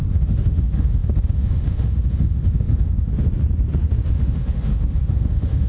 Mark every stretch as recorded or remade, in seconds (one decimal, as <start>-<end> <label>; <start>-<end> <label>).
0.0-3.1 remade; 3.1-4.1 recorded; 4.1-5.7 remade